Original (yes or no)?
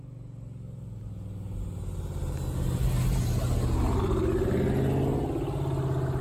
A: yes